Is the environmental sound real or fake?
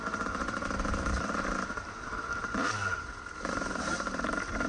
fake